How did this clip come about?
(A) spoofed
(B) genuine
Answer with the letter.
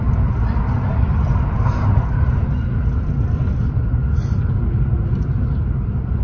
B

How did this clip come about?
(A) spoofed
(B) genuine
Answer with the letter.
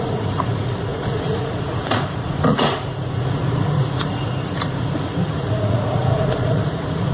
A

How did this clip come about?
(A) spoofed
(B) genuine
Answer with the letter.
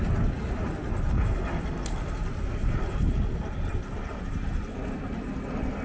B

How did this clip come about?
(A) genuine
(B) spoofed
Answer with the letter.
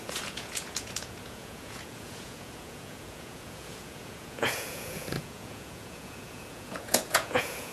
B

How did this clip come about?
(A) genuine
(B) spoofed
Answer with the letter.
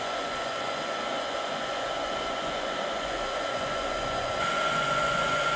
B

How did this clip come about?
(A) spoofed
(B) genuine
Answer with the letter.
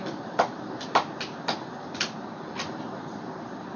B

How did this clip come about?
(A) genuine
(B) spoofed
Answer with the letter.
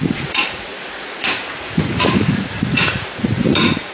B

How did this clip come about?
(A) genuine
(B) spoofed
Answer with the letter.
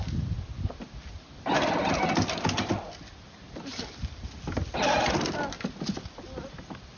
A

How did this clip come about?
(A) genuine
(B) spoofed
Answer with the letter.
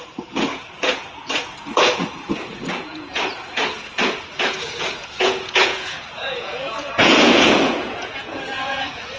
B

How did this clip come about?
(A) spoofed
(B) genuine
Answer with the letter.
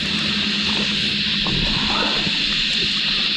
B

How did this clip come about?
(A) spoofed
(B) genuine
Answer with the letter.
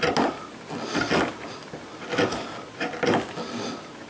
B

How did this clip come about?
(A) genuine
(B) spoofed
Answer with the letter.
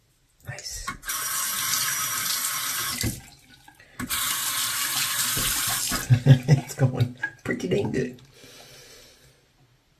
A